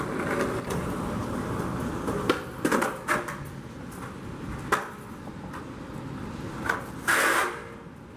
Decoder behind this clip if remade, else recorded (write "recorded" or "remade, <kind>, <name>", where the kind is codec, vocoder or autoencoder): recorded